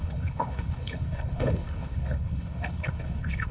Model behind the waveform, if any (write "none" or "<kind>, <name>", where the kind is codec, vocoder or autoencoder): codec, HILCodec